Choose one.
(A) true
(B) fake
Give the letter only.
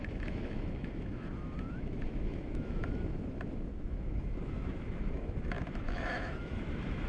B